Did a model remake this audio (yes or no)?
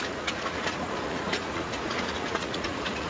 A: yes